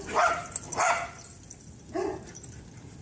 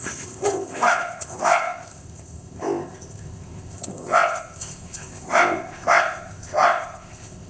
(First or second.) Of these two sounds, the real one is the first